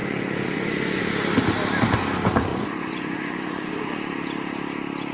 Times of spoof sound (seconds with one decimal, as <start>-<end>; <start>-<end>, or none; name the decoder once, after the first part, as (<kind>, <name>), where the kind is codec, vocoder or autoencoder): 0.0-1.0 (vocoder, Vocos); 2.5-4.0